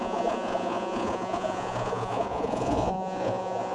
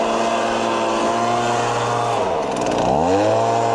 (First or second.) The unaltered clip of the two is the second